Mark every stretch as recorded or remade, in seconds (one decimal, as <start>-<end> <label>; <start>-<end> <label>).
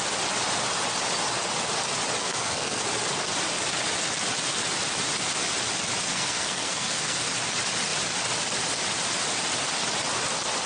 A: 0.0-2.2 recorded; 2.2-2.8 remade; 2.8-6.1 recorded; 6.1-7.2 remade; 7.2-10.7 recorded